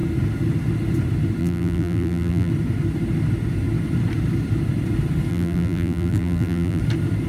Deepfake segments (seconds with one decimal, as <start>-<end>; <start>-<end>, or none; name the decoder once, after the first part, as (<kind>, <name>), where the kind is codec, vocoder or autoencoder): 1.4-2.5 (vocoder, BigVGAN v2); 5.3-6.8